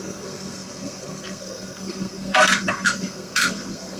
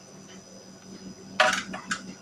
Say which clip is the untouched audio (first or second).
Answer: second